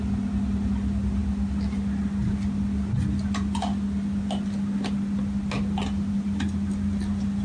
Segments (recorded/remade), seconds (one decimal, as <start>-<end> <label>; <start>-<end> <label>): 0.0-7.4 recorded